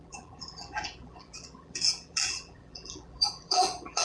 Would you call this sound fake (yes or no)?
yes